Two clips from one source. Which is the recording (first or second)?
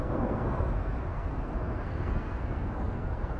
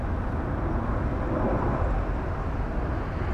second